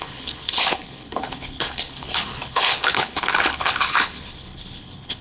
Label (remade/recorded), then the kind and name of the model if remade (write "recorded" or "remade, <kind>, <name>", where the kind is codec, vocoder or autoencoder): remade, codec, HILCodec